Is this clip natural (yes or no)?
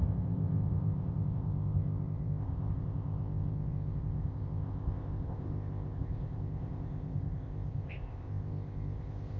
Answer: no